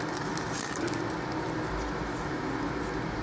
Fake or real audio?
real